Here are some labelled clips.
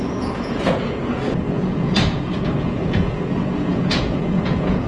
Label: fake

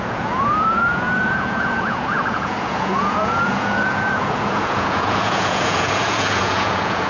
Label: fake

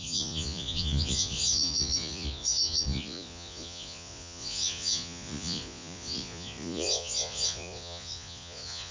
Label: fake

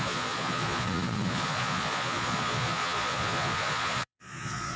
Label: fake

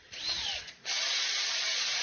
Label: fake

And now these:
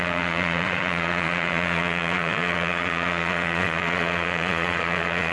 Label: fake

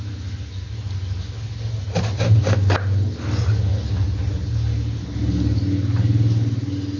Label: real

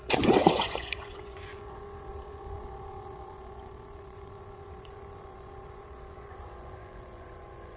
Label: fake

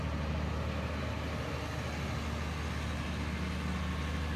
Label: real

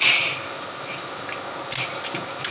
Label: real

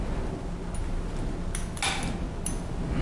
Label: real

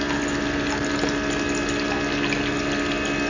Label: real